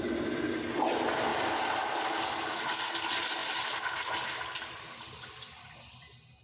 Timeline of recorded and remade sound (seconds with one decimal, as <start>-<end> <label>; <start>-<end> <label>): 0.0-1.3 recorded; 1.3-1.8 remade; 1.8-3.4 recorded; 3.4-5.6 remade; 5.6-6.4 recorded